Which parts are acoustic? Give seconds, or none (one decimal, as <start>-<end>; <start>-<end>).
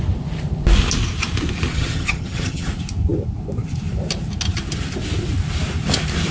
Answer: 0.0-1.7; 2.7-6.3